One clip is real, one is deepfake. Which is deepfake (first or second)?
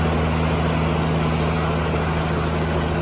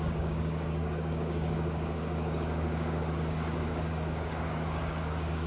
second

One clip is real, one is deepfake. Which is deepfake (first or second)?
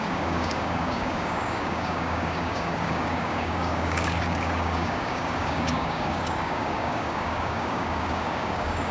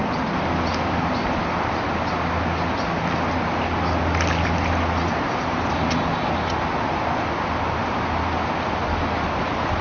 first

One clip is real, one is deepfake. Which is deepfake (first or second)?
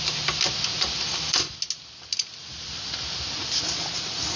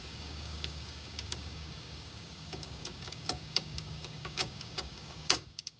second